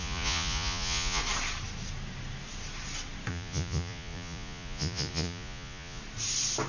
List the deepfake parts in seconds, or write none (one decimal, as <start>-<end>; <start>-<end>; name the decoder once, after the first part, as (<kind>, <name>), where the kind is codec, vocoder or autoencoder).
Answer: 0.0-1.2 (vocoder, Vocos); 3.3-6.0